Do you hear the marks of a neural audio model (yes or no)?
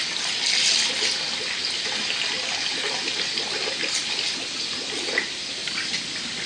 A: no